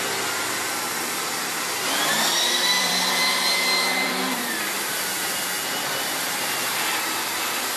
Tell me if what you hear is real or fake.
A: fake